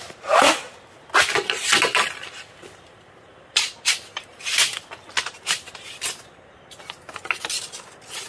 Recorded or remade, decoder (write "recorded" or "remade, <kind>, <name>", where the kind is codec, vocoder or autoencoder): recorded